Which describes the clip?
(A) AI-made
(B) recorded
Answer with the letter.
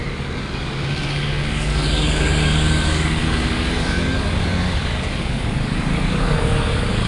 A